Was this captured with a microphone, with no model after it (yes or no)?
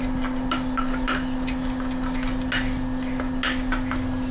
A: yes